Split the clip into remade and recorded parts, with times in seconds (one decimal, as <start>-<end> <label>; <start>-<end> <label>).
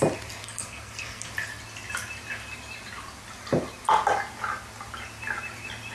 0.0-0.4 recorded; 0.4-1.3 remade; 1.3-5.9 recorded